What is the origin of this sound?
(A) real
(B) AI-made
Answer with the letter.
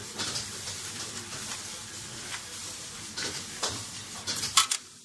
B